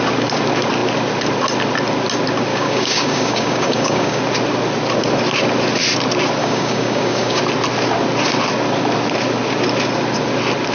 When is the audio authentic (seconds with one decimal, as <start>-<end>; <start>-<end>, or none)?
0.0-2.5; 4.2-6.4; 7.4-10.7